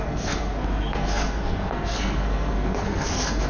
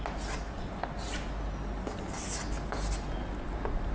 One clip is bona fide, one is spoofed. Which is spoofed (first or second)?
first